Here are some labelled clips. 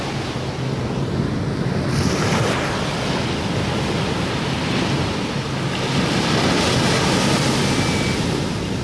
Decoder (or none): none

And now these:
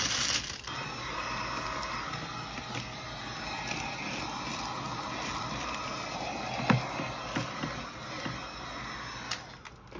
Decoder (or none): none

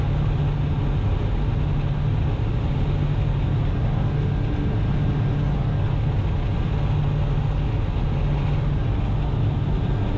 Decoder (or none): none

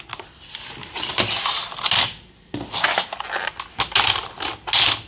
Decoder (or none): none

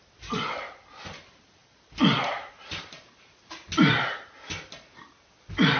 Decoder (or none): none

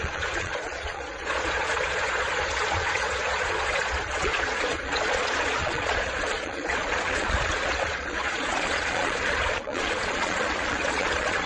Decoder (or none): vocoder, Vocos